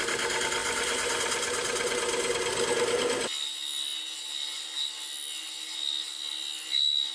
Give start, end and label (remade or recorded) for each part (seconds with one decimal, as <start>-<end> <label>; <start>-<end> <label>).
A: 0.0-7.1 recorded